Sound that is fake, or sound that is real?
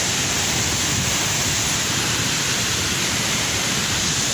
fake